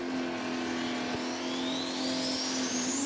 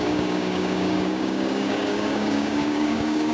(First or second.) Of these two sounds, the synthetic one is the second